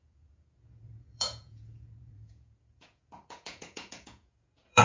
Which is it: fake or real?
fake